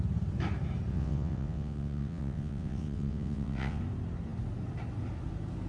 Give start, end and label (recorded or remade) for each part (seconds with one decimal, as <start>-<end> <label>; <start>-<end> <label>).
0.0-0.9 recorded; 0.9-3.8 remade; 3.8-5.7 recorded